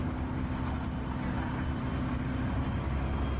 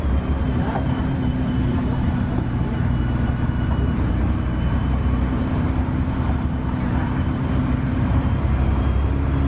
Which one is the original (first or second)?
first